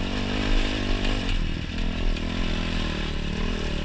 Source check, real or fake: real